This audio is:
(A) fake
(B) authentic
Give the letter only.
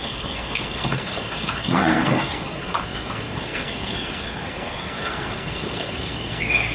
A